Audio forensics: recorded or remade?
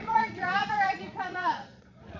remade